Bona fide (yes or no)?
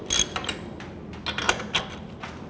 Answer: yes